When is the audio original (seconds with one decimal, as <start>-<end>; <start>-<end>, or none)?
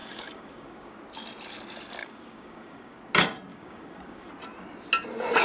1.0-2.0; 3.0-3.5; 4.3-5.4